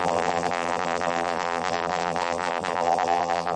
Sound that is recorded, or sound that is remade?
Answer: remade